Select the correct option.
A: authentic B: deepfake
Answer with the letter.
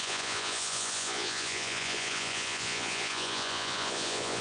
B